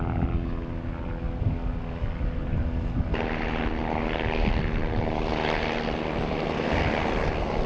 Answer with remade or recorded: recorded